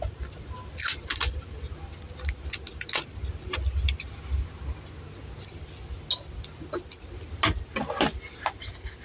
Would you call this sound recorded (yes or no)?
yes